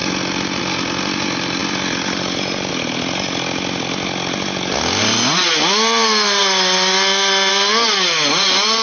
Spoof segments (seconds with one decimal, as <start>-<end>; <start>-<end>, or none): none